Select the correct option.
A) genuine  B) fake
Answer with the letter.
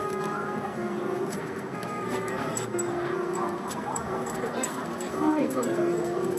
B